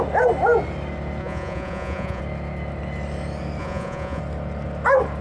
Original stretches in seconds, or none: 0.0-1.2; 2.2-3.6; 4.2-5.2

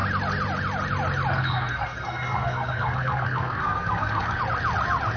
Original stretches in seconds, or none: 0.0-1.3; 4.4-5.2

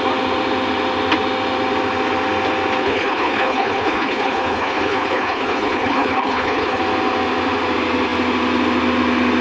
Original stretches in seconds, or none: 0.0-2.8; 6.8-9.4